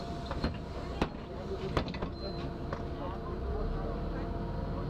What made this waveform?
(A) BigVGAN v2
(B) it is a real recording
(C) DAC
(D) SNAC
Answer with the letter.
B